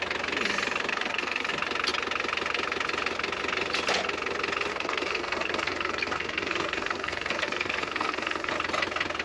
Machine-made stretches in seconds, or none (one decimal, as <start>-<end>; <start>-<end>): 0.9-1.5; 4.7-8.5